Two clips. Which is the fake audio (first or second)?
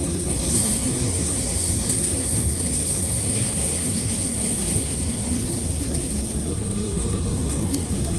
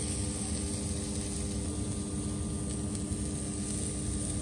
first